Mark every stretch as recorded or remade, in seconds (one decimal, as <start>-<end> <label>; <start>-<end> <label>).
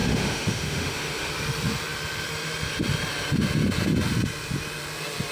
0.0-1.3 remade; 1.3-5.3 recorded